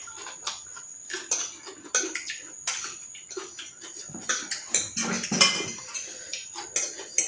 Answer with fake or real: real